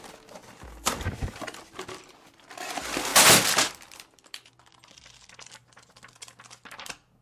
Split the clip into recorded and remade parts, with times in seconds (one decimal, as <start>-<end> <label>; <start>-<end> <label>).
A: 0.0-7.2 recorded